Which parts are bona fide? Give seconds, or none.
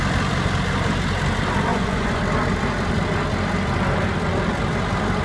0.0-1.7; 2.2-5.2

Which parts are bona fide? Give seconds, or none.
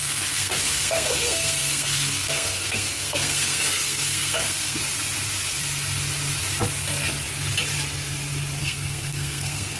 4.8-8.6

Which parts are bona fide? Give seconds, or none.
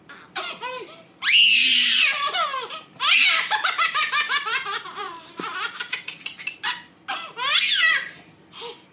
0.0-1.7; 5.9-8.9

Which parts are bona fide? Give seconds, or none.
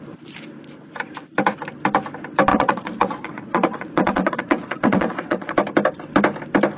0.0-2.5; 5.5-6.8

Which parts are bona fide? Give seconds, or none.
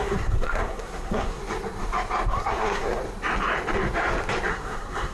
1.4-2.3; 3.0-4.5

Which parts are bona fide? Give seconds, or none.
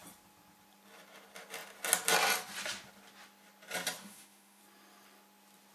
0.0-4.0; 4.6-5.7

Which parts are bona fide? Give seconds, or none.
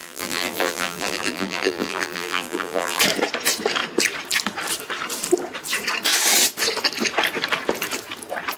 3.0-8.6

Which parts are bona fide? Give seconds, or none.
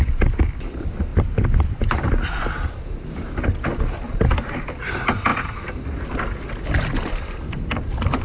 0.0-1.1; 2.1-8.2